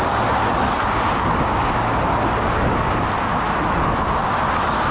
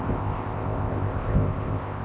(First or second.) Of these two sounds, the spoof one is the second